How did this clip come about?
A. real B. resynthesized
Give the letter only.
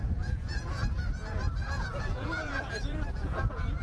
B